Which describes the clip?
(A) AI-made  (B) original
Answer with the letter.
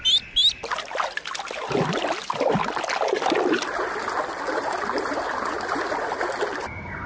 B